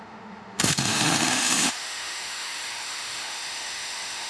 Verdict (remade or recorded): remade